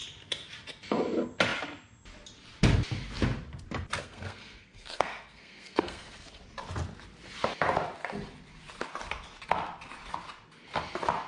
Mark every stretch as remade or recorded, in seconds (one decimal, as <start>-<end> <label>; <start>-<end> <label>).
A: 0.0-4.0 recorded; 4.0-6.4 remade; 6.4-11.3 recorded